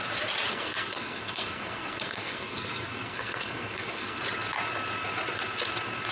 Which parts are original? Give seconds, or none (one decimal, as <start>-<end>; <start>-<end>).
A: 0.0-0.5; 4.2-6.1